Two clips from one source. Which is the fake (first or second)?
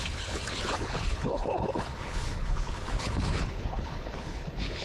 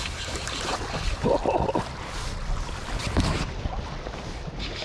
first